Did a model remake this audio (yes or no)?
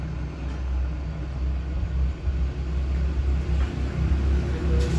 no